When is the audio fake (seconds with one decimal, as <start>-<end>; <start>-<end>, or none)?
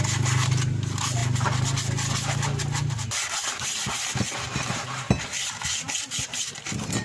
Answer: none